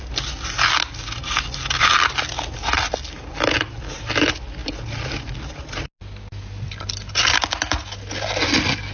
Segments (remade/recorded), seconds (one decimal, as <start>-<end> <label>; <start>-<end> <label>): 0.0-8.9 recorded